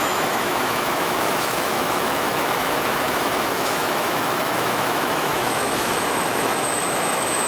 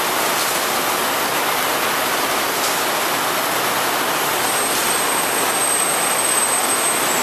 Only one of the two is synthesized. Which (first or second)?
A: first